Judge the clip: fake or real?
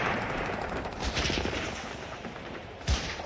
fake